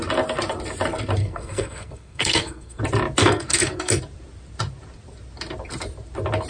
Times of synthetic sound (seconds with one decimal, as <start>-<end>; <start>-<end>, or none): 1.2-2.8; 3.2-4.0